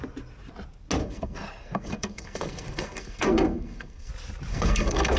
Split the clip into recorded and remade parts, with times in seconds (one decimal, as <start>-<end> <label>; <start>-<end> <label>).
0.0-1.0 recorded; 1.0-4.1 remade; 4.1-4.5 recorded; 4.5-5.2 remade